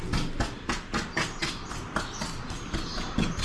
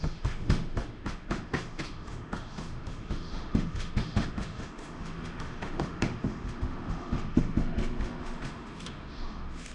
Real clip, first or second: first